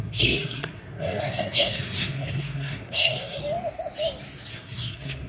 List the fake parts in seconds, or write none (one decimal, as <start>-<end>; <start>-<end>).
0.0-3.4; 4.5-5.3